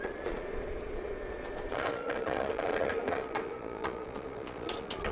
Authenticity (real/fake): fake